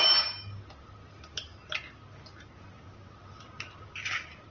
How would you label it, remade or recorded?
recorded